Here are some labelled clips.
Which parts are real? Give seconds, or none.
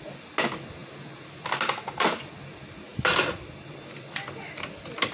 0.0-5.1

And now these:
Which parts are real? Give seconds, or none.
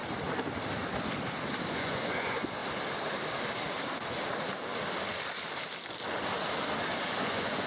0.0-1.7; 2.6-7.2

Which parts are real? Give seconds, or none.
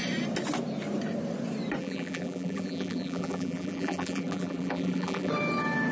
0.0-1.8; 5.3-5.9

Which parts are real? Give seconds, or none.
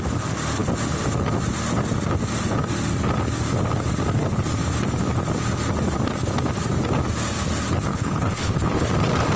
0.0-7.9; 8.9-9.4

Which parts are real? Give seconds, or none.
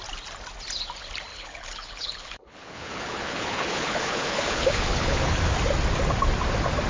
0.0-1.3; 5.4-6.9